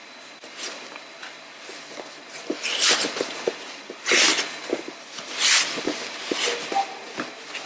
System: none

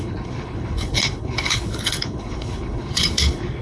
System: codec, HILCodec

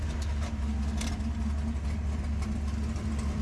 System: none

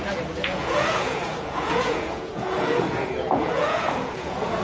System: vocoder, Vocos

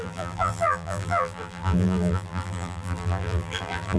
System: vocoder, BigVGAN v2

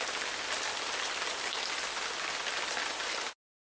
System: none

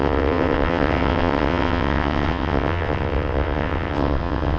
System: vocoder, WaveNeXt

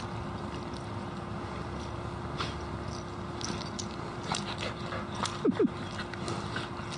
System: none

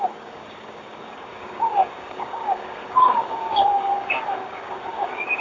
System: codec, DAC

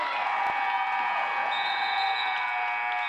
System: none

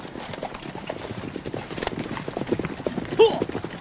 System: none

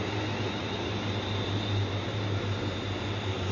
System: none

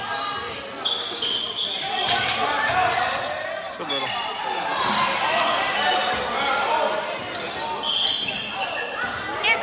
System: none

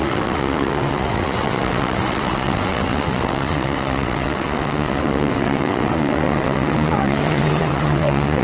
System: vocoder, WaveNeXt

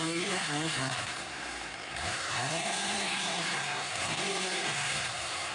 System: codec, SNAC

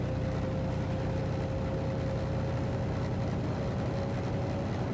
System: none